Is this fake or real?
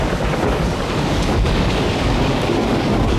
fake